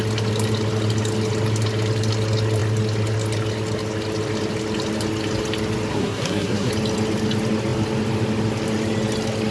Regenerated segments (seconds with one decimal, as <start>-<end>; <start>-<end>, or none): 5.9-6.7